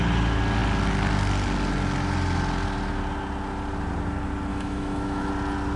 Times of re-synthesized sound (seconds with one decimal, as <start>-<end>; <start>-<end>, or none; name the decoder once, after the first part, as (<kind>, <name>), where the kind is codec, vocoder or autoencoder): 4.5-5.3 (autoencoder, DAC-VAE)